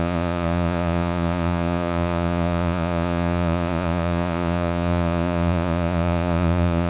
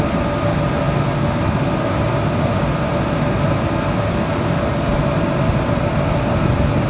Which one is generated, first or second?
first